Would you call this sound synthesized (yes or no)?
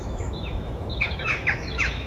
yes